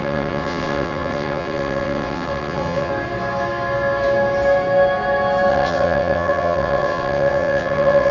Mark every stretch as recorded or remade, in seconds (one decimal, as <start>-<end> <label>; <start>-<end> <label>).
0.0-2.9 remade; 2.9-5.5 recorded; 5.5-8.1 remade